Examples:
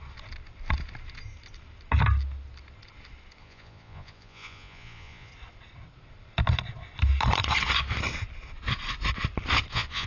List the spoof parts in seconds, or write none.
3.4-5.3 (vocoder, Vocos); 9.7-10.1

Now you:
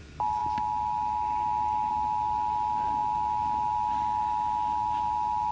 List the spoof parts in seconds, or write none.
none

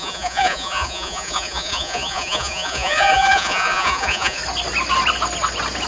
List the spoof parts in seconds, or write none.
0.0-4.4 (vocoder, Vocos)

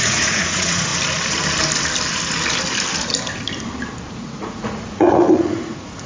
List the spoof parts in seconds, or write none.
0.0-0.9 (vocoder, Vocos); 4.1-6.1